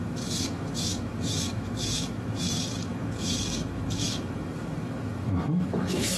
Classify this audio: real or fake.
fake